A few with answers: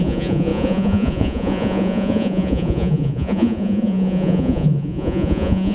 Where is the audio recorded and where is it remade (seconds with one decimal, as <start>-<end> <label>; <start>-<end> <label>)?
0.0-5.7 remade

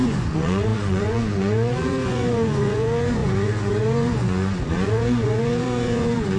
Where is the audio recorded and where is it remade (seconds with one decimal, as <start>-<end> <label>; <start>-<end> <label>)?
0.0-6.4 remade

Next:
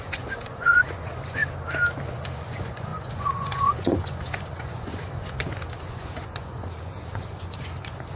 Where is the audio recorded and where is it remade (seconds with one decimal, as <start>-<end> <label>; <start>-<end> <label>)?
0.0-1.4 remade; 1.4-2.1 recorded; 2.1-8.2 remade

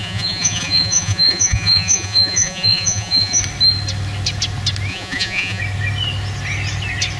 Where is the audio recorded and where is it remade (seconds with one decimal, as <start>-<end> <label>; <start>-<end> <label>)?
0.0-3.4 remade; 3.4-4.9 recorded; 4.9-5.6 remade; 5.6-7.2 recorded

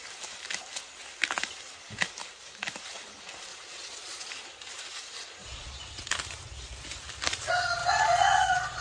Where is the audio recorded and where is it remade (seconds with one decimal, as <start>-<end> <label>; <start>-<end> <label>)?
0.0-3.5 recorded; 3.5-4.3 remade; 4.3-5.4 recorded; 5.4-6.1 remade; 6.1-7.8 recorded; 7.8-8.8 remade